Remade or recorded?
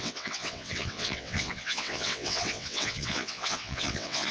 remade